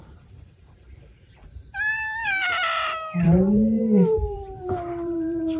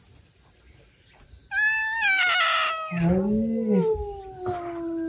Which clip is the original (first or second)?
second